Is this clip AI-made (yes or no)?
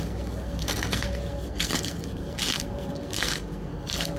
yes